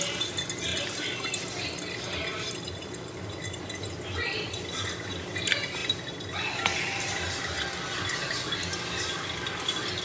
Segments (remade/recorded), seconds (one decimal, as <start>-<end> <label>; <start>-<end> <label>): 0.0-0.7 recorded; 0.7-1.4 remade; 1.4-2.3 recorded; 2.3-3.3 remade; 3.3-10.0 recorded